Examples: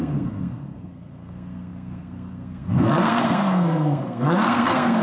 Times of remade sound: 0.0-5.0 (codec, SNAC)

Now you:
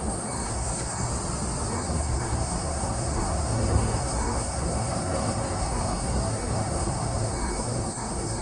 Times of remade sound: 0.0-1.1 (codec, SNAC); 1.7-8.4

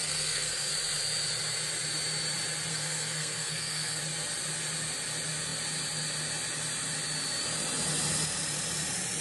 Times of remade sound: 0.0-0.7 (codec, SNAC); 2.7-4.0

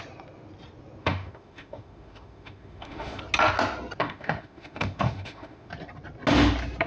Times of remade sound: 1.0-3.2 (autoencoder, DAC-VAE); 4.0-5.7